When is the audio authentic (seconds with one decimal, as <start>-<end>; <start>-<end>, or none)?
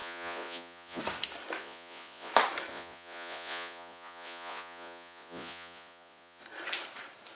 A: 1.0-1.6; 2.3-2.7; 6.4-7.3